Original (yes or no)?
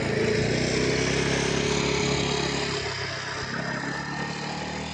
yes